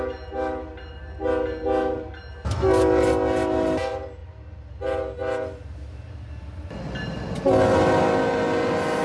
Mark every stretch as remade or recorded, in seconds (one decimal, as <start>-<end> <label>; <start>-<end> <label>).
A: 0.0-9.0 recorded